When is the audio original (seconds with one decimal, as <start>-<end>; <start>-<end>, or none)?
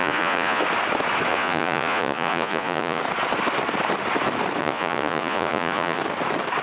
0.6-1.3; 3.0-4.6; 6.0-6.6